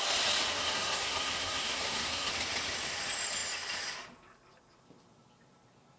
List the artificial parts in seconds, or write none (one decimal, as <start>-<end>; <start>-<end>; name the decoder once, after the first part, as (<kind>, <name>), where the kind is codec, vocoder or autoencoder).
0.6-2.3 (codec, SNAC)